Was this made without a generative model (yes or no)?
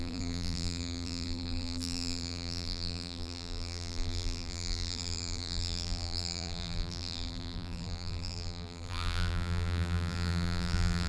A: no